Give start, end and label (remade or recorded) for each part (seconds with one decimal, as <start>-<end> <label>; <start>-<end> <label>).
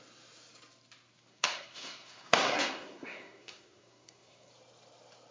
0.0-1.3 recorded; 1.3-4.5 remade; 4.5-5.3 recorded